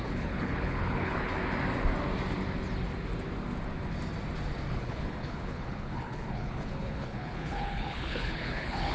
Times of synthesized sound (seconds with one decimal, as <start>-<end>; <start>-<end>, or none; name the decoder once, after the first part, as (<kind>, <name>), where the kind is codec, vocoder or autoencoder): 0.0-1.3 (codec, HILCodec); 4.7-8.9